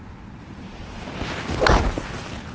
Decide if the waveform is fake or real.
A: real